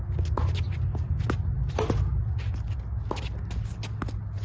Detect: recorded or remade recorded